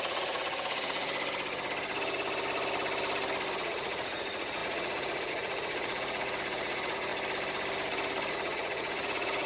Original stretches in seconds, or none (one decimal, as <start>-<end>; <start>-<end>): 1.1-3.6; 7.1-8.3